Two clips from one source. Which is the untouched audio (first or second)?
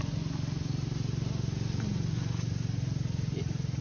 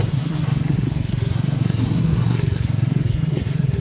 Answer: first